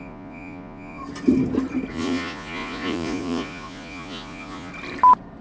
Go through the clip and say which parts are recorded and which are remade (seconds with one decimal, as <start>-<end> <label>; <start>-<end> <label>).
0.0-1.0 remade; 1.0-1.9 recorded; 1.9-4.7 remade; 4.7-5.4 recorded